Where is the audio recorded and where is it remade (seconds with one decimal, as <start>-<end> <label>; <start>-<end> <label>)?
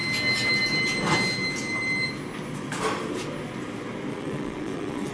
0.0-4.1 recorded; 4.1-5.1 remade